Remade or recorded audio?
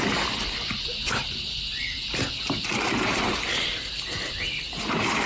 recorded